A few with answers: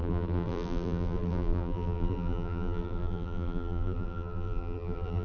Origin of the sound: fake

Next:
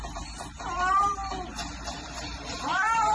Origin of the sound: fake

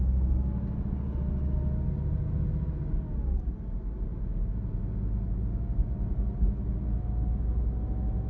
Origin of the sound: real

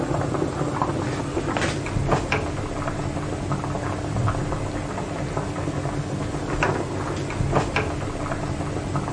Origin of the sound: real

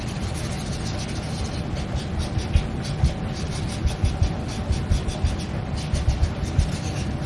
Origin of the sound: real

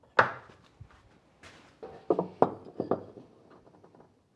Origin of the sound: real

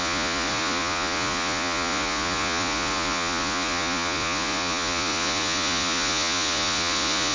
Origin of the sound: fake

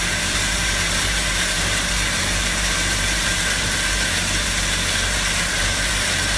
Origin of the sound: fake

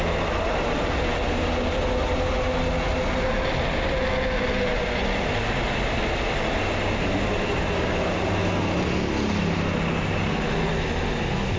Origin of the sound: real